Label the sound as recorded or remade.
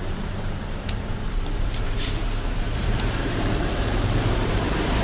remade